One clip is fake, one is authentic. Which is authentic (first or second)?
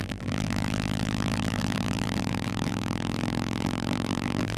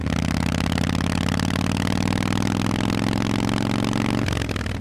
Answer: second